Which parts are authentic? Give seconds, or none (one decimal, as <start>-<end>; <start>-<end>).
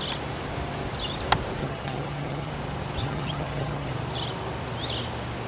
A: 0.0-1.6; 2.5-3.0; 3.9-5.5